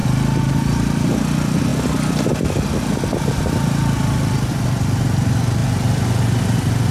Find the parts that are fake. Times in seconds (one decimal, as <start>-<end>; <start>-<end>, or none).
none